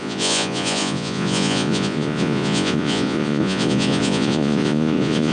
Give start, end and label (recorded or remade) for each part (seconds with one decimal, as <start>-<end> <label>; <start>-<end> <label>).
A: 0.0-5.3 remade